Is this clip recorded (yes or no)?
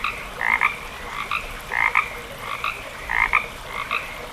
no